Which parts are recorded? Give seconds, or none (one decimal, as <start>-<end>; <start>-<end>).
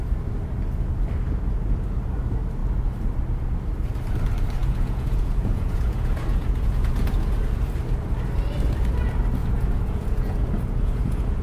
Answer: 0.0-4.6; 7.4-9.4